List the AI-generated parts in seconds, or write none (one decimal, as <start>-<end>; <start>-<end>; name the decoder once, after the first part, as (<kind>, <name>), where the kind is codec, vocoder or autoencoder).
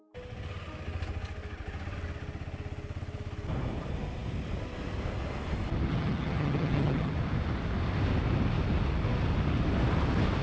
5.9-7.1 (vocoder, HiFi-GAN)